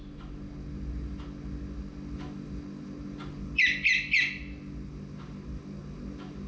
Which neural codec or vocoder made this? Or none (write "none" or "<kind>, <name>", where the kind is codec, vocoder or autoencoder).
none